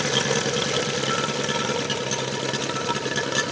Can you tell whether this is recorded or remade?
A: recorded